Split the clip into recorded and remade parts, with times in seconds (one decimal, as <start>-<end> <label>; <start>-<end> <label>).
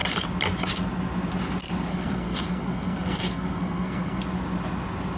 0.0-1.9 recorded; 1.9-4.2 remade; 4.2-5.2 recorded